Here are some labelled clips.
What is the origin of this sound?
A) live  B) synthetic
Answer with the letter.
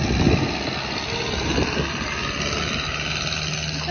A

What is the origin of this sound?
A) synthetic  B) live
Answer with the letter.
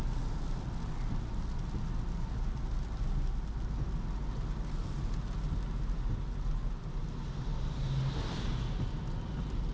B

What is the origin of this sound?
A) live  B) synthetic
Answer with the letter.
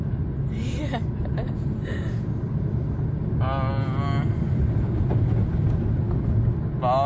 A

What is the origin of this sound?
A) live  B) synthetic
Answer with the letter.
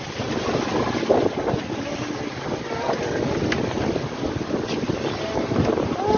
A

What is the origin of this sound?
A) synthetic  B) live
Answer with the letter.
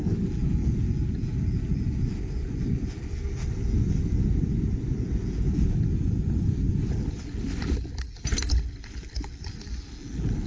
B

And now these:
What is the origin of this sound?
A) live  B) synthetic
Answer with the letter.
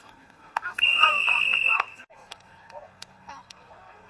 B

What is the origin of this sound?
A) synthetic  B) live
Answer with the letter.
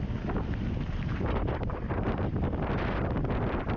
B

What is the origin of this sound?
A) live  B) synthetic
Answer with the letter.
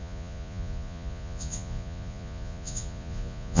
B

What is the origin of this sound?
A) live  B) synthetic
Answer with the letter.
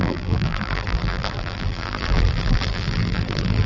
B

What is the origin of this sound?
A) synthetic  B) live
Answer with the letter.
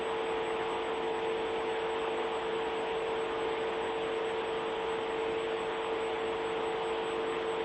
B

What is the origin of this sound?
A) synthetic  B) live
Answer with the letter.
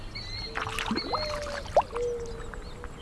B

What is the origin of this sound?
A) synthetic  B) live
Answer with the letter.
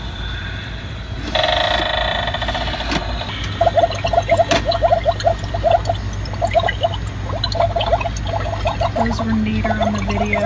B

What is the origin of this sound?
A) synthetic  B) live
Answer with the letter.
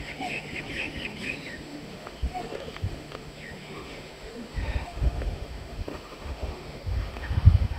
A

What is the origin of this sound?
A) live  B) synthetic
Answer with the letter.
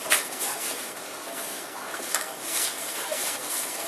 B